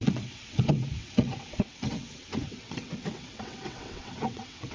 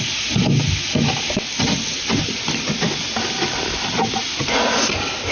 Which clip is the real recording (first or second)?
second